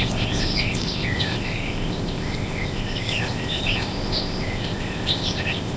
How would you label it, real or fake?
fake